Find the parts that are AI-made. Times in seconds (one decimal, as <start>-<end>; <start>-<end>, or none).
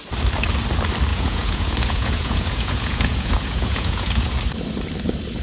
1.1-4.3